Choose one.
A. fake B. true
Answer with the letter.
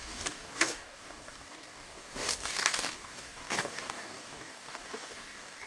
A